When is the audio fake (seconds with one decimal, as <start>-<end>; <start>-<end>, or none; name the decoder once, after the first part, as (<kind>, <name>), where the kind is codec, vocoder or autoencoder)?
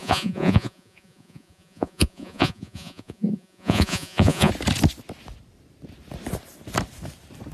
0.0-4.5 (vocoder, Vocos)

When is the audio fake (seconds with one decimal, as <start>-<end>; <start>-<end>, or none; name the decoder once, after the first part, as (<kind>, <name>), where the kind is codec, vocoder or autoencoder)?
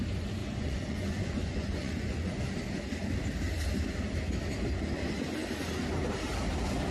0.4-2.4 (vocoder, Vocos)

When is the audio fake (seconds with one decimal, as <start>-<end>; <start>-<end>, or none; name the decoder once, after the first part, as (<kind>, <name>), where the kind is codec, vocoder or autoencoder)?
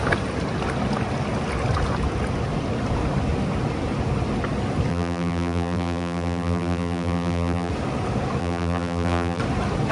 4.9-7.7 (vocoder, BigVGAN v2); 8.4-9.4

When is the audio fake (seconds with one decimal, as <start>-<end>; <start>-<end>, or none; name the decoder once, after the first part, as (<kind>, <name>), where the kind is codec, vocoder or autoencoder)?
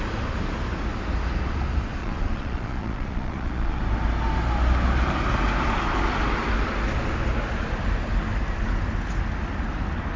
2.0-3.8 (vocoder, Vocos)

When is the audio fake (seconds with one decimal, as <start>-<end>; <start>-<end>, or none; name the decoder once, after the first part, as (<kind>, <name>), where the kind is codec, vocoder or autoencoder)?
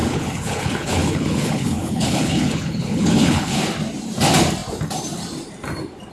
0.0-3.6 (codec, HILCodec)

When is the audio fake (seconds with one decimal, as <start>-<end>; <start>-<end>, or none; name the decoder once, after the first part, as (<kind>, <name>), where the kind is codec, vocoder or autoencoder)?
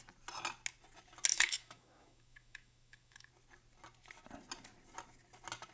1.3-3.3 (autoencoder, DAC-VAE)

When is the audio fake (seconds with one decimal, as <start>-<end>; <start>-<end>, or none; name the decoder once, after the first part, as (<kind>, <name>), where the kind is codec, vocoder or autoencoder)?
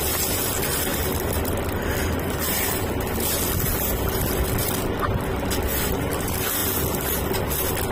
0.9-1.8 (vocoder, BigVGAN v2)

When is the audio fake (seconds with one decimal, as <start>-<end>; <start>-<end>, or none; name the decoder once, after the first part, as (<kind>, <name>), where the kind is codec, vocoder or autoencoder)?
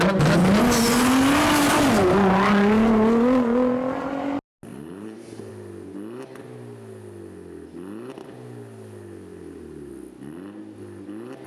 4.7-5.5 (vocoder, BigVGAN v2); 9.3-9.9